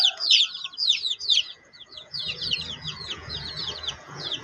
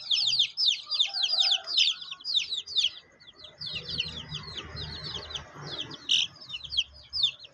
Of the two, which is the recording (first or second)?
second